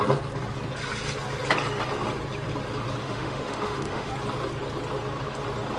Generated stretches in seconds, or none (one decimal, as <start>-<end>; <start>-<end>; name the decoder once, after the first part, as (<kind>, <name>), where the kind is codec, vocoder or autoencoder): 3.0-4.1 (autoencoder, DAC-VAE)